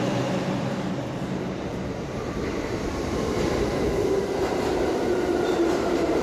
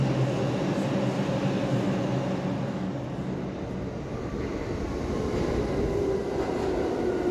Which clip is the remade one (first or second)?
first